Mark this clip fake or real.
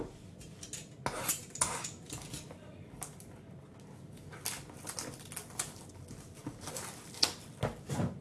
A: real